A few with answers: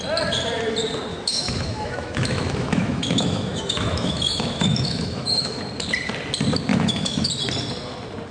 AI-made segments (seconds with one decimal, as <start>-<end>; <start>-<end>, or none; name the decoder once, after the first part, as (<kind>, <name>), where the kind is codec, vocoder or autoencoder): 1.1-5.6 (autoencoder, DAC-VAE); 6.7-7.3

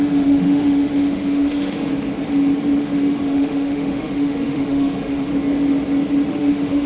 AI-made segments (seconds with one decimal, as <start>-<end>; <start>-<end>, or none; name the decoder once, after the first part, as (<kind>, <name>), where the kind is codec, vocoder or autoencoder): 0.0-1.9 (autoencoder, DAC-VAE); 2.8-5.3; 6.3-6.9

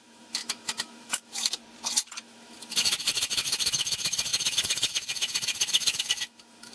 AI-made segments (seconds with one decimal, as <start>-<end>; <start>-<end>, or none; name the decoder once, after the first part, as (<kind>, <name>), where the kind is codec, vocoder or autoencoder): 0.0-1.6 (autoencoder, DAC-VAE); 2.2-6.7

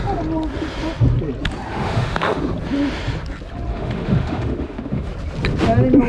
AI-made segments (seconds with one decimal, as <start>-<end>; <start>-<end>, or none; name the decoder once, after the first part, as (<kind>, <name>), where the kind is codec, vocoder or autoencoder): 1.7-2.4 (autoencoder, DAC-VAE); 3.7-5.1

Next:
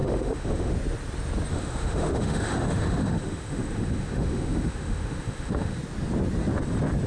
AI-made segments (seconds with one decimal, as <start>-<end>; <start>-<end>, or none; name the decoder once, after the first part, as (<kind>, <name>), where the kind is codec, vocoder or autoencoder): 0.0-0.7 (autoencoder, DAC-VAE); 1.5-5.8